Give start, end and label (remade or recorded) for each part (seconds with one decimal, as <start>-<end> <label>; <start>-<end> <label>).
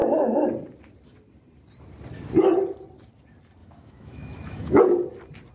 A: 0.0-3.6 recorded; 3.6-4.8 remade; 4.8-5.5 recorded